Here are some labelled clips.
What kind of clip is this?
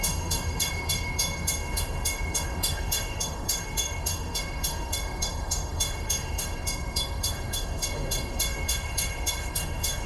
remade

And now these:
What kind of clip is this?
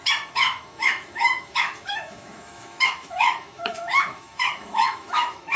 remade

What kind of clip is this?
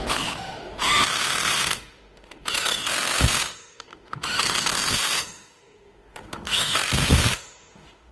remade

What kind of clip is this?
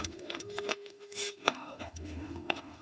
remade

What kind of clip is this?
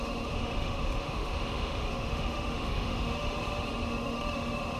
remade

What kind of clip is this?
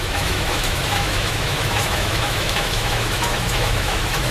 remade